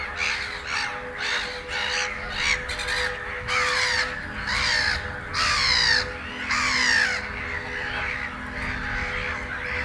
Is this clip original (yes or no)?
yes